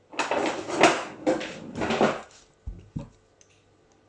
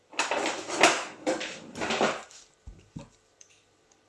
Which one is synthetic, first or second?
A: second